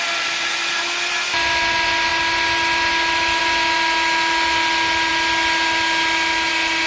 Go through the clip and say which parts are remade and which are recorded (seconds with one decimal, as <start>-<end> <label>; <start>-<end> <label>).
0.0-6.9 recorded

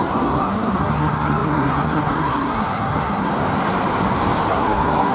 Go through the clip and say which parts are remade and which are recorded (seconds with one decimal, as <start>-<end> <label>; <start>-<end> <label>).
0.0-3.3 remade; 3.3-4.5 recorded; 4.5-5.1 remade